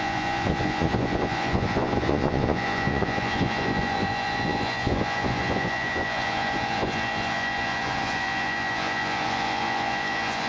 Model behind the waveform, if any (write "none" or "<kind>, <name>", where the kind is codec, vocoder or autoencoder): vocoder, Vocos